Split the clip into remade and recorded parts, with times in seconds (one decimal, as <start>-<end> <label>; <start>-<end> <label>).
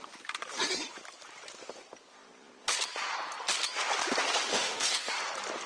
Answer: 0.0-4.5 recorded; 4.5-5.1 remade; 5.1-5.7 recorded